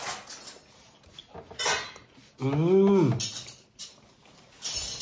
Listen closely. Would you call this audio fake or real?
real